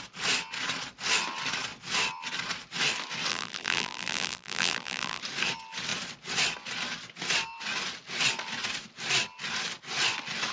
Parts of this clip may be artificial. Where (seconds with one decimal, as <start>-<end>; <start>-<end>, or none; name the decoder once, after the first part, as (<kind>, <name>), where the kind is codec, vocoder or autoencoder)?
3.3-5.2 (vocoder, BigVGAN v2)